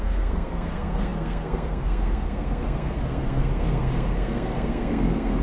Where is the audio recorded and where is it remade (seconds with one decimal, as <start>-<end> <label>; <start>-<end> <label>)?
0.0-5.4 remade